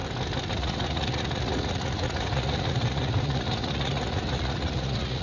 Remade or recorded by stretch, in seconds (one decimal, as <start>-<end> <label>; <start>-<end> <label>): 0.0-0.5 recorded; 0.5-5.2 remade